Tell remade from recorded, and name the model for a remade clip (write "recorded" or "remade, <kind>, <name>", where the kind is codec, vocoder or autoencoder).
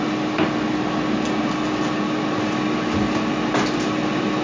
recorded